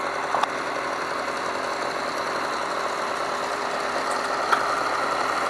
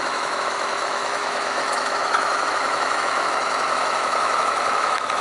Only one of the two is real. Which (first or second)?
first